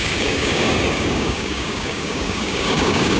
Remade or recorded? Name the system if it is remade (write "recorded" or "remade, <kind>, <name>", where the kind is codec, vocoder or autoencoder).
remade, codec, DAC